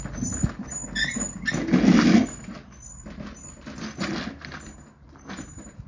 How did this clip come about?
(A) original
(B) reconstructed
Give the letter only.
A